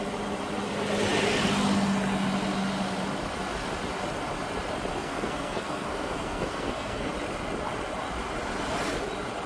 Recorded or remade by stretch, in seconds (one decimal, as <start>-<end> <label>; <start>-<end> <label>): 0.0-4.9 recorded; 4.9-7.1 remade; 7.1-9.5 recorded